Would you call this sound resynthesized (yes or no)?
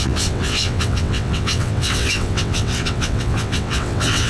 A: yes